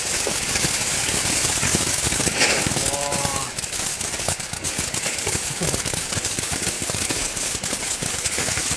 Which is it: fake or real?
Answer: fake